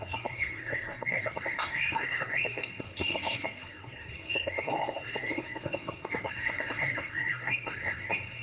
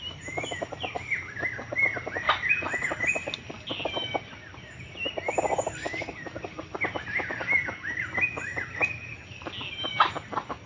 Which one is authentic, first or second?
second